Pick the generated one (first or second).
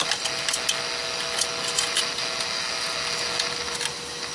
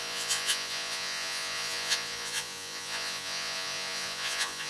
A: second